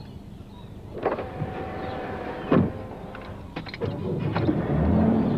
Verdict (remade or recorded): recorded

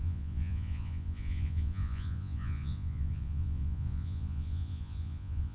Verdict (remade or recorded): remade